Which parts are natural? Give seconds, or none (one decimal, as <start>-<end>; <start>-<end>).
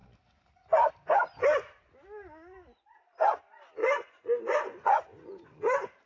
0.0-3.8; 5.6-6.1